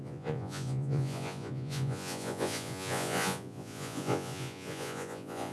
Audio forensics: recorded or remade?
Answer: remade